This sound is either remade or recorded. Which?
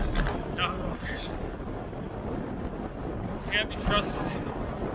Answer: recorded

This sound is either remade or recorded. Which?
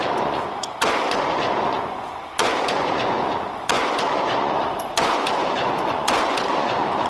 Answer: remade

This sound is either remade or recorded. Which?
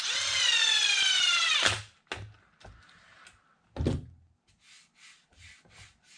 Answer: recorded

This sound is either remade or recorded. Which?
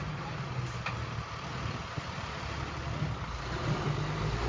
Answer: recorded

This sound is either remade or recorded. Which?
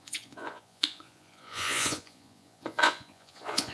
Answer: remade